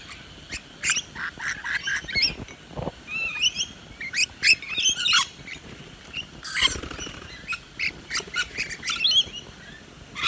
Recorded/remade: recorded